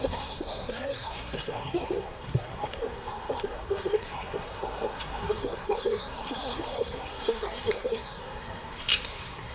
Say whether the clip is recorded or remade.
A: remade